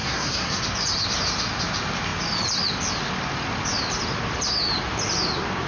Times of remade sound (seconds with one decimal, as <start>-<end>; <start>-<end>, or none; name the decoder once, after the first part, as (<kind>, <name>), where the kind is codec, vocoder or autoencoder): 0.0-0.6 (codec, SNAC)